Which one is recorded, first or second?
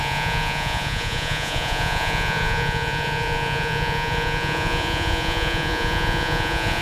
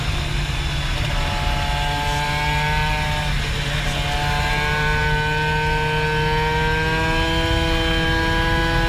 second